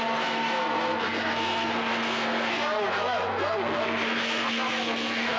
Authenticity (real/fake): fake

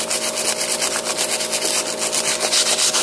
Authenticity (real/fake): real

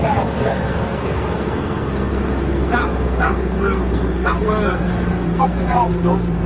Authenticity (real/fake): fake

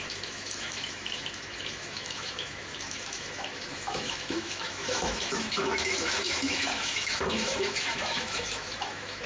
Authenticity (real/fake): fake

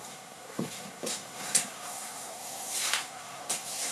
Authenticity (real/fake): fake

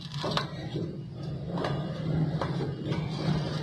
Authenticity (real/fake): real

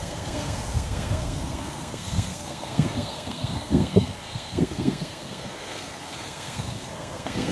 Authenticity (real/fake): fake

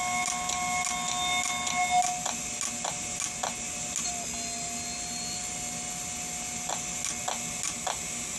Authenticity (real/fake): real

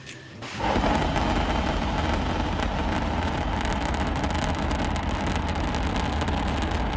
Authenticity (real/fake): real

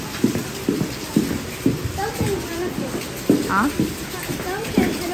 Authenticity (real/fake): real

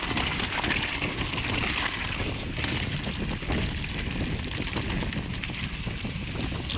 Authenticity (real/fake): real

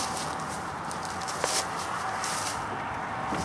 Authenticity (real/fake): real